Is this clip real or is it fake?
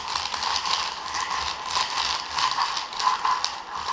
real